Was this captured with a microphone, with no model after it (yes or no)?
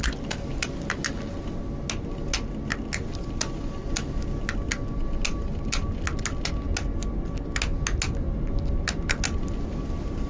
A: yes